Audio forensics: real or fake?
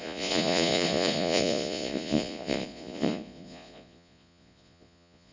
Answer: fake